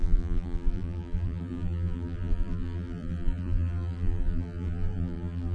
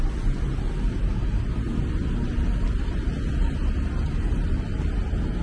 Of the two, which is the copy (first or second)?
first